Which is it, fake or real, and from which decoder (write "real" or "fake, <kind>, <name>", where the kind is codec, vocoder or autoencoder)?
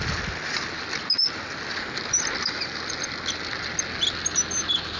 real